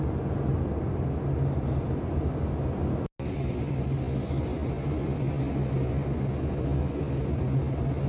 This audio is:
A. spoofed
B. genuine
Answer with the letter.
B